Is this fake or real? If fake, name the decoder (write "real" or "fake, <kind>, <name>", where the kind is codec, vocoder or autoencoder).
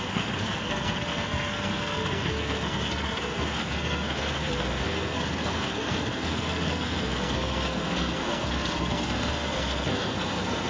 fake, codec, SNAC